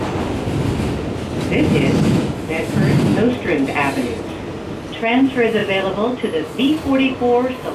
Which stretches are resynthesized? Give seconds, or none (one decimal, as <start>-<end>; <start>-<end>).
none